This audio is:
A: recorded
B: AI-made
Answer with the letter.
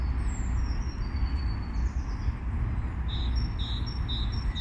A